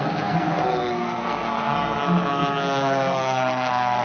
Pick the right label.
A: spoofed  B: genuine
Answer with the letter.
A